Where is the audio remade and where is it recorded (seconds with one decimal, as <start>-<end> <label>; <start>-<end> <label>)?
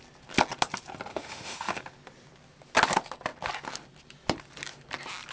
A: 0.0-1.1 recorded; 1.1-1.8 remade; 1.8-5.3 recorded